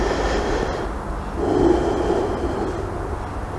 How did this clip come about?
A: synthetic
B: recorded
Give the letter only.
B